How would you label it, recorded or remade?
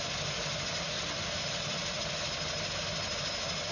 recorded